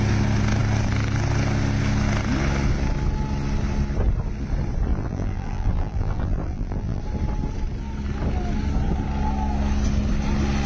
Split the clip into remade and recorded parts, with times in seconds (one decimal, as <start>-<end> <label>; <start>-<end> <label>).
0.0-4.9 recorded; 4.9-7.0 remade; 7.0-10.7 recorded